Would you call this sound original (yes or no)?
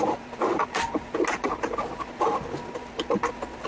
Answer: yes